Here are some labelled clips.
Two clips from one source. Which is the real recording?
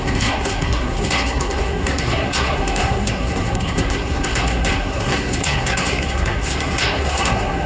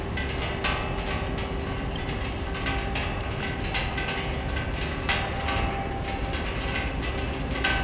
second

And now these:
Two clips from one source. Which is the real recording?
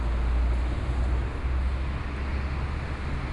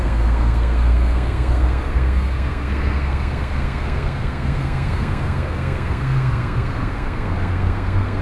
first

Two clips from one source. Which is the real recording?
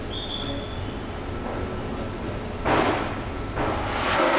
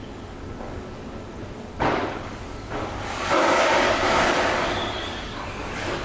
first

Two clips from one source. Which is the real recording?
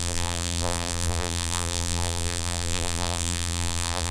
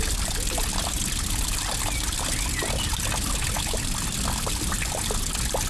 second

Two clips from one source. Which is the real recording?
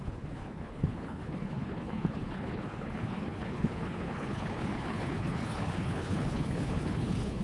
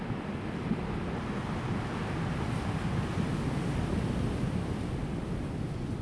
second